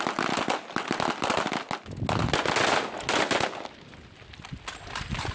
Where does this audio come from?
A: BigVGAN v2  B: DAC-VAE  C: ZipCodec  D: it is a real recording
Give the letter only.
D